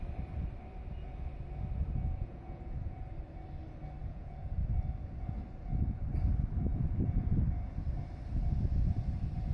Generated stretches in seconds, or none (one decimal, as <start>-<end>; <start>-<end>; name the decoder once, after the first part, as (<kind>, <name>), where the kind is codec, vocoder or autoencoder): 2.0-3.1 (vocoder, Vocos); 4.0-4.6; 6.7-7.4